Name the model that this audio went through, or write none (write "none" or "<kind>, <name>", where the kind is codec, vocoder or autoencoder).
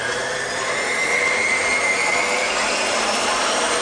vocoder, BigVGAN v2